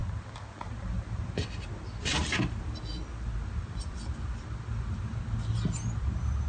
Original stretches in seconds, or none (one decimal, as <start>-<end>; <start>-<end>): 0.0-6.5